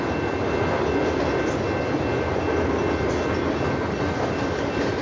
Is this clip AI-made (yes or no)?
no